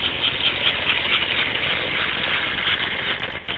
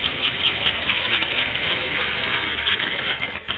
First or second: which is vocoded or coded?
second